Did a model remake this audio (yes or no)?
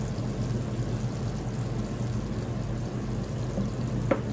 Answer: no